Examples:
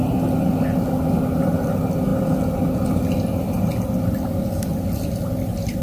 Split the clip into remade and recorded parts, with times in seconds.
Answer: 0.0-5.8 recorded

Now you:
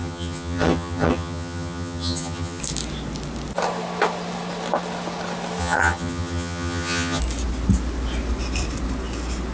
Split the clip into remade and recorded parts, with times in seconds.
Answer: 0.0-2.6 remade; 2.6-5.6 recorded; 5.6-7.2 remade; 7.2-9.5 recorded